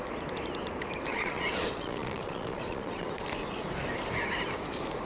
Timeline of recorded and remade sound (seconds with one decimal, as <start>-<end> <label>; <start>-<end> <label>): 0.0-1.1 recorded; 1.1-3.1 remade; 3.1-5.1 recorded